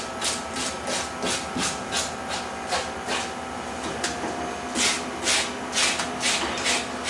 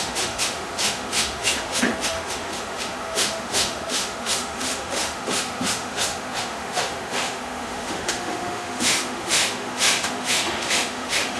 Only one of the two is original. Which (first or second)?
first